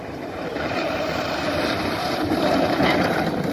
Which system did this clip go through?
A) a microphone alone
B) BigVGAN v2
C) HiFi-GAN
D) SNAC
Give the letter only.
B